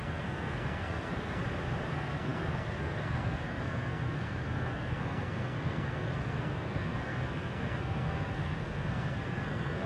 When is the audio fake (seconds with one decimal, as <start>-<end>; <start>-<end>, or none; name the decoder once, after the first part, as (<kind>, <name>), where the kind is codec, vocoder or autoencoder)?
0.0-1.4 (codec, SNAC); 1.9-9.9